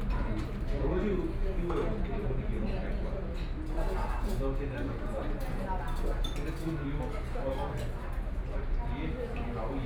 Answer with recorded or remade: recorded